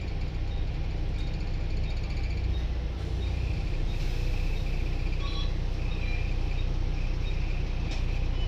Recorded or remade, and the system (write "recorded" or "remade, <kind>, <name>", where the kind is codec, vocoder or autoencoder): recorded